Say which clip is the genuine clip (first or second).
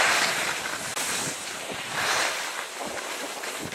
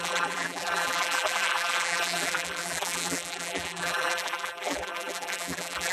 first